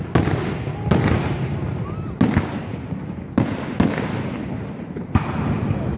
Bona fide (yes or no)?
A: yes